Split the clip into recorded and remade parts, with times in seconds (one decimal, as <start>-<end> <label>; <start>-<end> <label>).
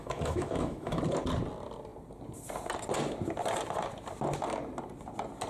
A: 0.0-1.0 remade; 1.0-5.5 recorded